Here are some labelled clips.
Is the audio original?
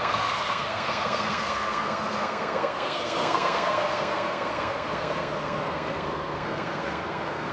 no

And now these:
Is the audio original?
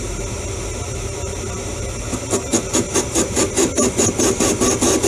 yes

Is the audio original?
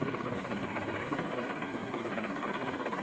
no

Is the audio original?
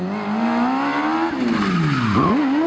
yes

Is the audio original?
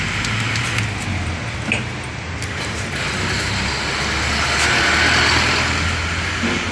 yes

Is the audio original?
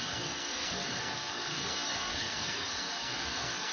no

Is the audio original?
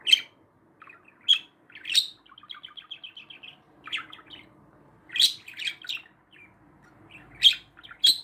yes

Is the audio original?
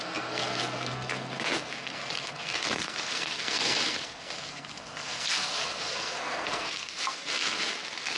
no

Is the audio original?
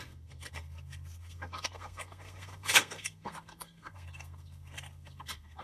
no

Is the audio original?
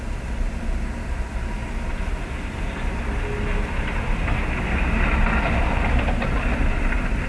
yes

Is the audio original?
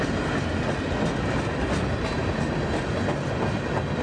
yes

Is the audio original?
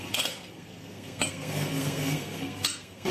no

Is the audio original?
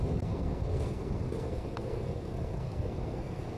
no